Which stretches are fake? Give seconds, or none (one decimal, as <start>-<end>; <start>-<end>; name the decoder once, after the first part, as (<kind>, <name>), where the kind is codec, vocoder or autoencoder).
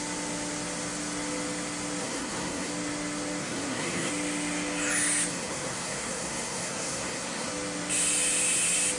2.0-2.7 (codec, SNAC); 3.4-4.1; 5.3-7.5